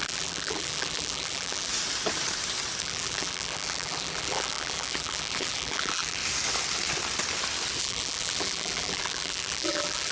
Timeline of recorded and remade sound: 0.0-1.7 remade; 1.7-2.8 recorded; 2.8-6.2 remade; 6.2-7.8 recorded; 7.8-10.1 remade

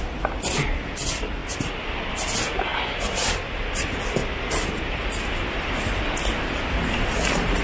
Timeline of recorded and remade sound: 0.0-1.4 recorded; 1.4-2.1 remade; 2.1-4.2 recorded; 4.2-5.7 remade; 5.7-7.6 recorded

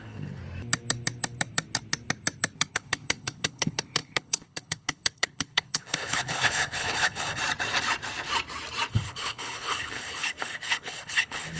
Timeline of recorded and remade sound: 0.0-0.4 remade; 0.4-2.7 recorded; 2.7-7.4 remade; 7.4-8.9 recorded; 8.9-11.6 remade

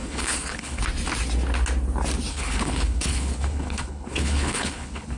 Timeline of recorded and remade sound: 0.0-0.8 remade; 0.8-2.3 recorded; 2.3-5.2 remade